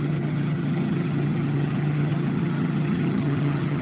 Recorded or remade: remade